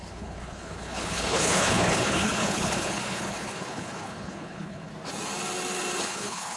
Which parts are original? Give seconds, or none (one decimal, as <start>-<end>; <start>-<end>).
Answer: 4.9-6.0